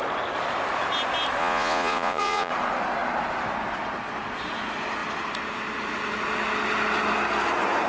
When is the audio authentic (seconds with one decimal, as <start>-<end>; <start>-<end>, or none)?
0.0-1.4; 2.5-7.9